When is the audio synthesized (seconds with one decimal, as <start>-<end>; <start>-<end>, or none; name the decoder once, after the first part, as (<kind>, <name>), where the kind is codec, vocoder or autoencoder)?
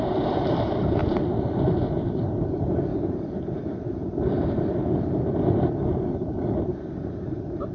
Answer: 0.0-1.0 (vocoder, BigVGAN v2); 2.1-2.9; 6.6-7.7